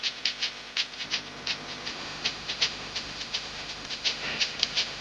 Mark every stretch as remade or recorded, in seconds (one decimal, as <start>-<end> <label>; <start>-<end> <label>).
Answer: 0.0-1.9 recorded; 1.9-5.0 remade